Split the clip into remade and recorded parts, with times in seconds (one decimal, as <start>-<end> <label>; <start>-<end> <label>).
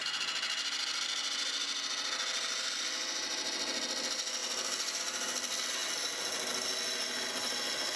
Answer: 0.0-8.0 recorded